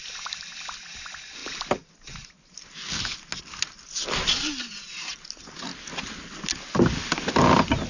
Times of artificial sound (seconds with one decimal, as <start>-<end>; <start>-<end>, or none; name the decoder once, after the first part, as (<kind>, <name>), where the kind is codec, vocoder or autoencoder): none